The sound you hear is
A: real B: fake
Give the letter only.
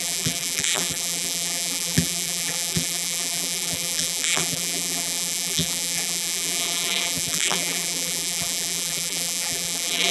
B